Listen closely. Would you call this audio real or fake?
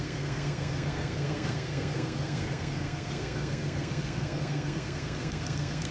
fake